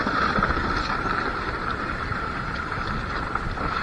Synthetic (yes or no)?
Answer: yes